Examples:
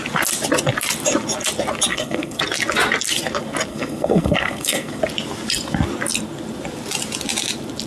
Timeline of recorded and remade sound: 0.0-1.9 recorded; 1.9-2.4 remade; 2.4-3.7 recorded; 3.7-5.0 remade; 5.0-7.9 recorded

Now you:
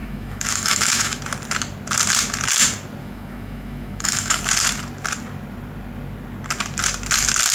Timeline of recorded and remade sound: 0.0-1.2 remade; 1.2-3.0 recorded; 3.0-4.4 remade; 4.4-7.5 recorded

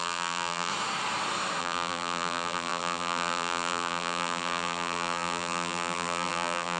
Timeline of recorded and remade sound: 0.0-0.7 remade; 0.7-1.6 recorded; 1.6-6.8 remade

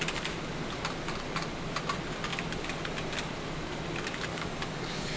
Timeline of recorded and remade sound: 0.0-4.3 recorded; 4.3-5.2 remade

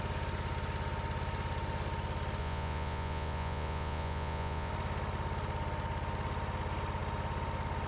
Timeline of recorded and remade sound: 0.0-2.4 recorded; 2.4-4.7 remade; 4.7-7.9 recorded

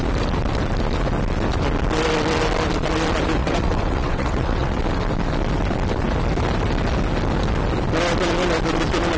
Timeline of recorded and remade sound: 0.0-3.4 recorded; 3.4-4.8 remade; 4.8-9.2 recorded

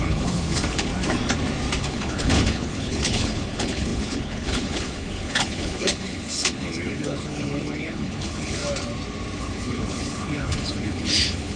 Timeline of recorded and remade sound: 0.0-0.9 remade; 0.9-1.8 recorded; 1.8-8.6 remade; 8.6-9.4 recorded; 9.4-11.6 remade